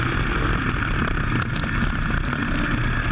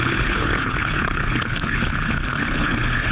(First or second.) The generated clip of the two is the second